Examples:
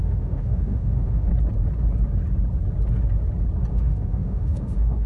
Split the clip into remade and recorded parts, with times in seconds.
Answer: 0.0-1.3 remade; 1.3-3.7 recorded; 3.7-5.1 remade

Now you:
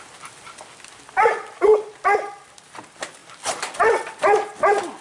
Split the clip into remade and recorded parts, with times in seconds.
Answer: 0.0-1.7 recorded; 1.7-2.5 remade; 2.5-5.0 recorded